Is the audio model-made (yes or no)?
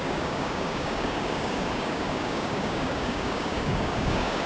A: yes